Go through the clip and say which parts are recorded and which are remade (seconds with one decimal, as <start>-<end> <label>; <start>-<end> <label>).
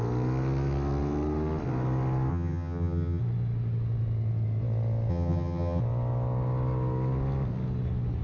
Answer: 0.0-2.3 recorded; 2.3-3.2 remade; 3.2-5.1 recorded; 5.1-5.8 remade; 5.8-8.2 recorded